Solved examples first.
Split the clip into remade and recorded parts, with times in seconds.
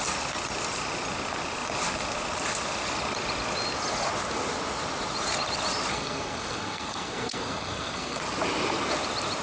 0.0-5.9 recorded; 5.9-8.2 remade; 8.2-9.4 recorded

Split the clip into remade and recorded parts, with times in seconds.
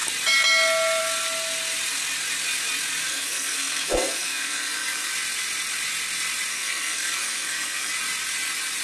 0.0-3.1 recorded; 3.1-5.1 remade; 5.1-6.5 recorded; 6.5-7.9 remade; 7.9-8.8 recorded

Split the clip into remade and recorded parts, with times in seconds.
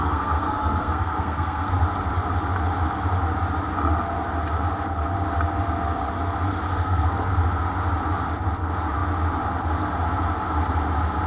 0.0-1.7 remade; 1.7-6.7 recorded; 6.7-7.3 remade; 7.3-11.3 recorded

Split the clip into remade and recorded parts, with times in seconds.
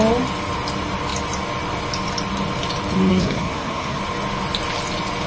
0.0-3.1 recorded; 3.1-4.0 remade; 4.0-5.3 recorded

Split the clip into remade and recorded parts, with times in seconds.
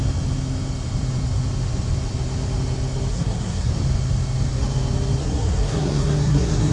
0.0-3.1 recorded; 3.1-3.7 remade; 3.7-5.2 recorded; 5.2-6.7 remade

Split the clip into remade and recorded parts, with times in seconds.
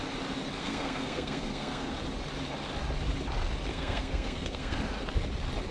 0.0-0.6 recorded; 0.6-1.9 remade; 1.9-3.7 recorded; 3.7-4.8 remade; 4.8-5.7 recorded